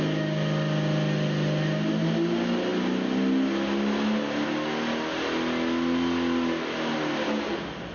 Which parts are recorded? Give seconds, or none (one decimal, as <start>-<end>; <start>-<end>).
0.0-7.9